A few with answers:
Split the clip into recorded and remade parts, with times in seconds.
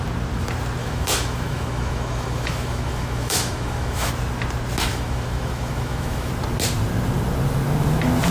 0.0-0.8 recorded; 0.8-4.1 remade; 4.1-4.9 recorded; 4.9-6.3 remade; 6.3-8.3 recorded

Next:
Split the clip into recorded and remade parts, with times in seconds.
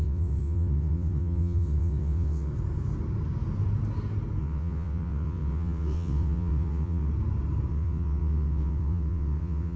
0.0-2.5 remade; 2.5-4.4 recorded; 4.4-7.1 remade; 7.1-7.7 recorded; 7.7-9.8 remade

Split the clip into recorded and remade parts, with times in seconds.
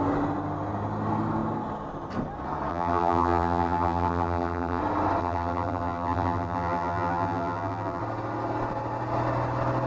0.0-2.7 recorded; 2.7-4.8 remade; 4.8-5.2 recorded; 5.2-8.0 remade; 8.0-9.9 recorded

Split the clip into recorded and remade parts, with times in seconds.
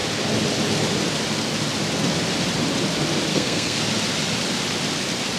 0.0-3.3 recorded; 3.3-3.8 remade; 3.8-5.4 recorded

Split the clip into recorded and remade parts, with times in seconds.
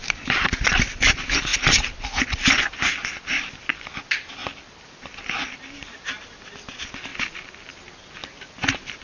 0.0-9.0 recorded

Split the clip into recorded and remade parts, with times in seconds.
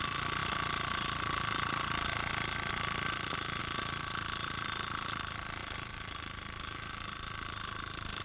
0.0-5.6 recorded; 5.6-6.4 remade; 6.4-8.2 recorded